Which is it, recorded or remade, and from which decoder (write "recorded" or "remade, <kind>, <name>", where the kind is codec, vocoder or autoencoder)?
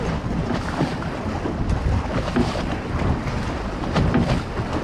recorded